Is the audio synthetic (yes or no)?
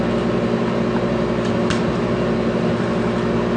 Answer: no